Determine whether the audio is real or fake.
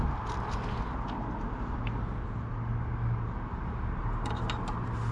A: real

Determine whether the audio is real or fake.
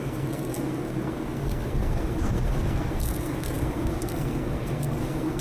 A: fake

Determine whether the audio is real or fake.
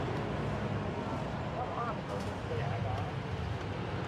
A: real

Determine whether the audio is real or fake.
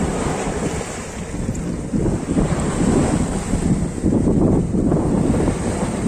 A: real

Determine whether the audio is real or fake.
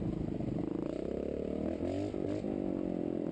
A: real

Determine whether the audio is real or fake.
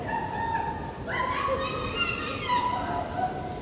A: real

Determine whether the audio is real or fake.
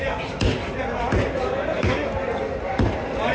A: real